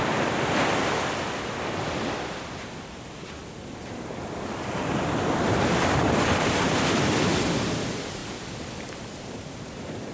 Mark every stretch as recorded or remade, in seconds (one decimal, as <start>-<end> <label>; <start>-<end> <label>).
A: 0.0-8.2 remade; 8.2-9.0 recorded; 9.0-10.1 remade